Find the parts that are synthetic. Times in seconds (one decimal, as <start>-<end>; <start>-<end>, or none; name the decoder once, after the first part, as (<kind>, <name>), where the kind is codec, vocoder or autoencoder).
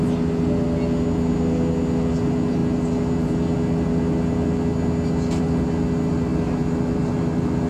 none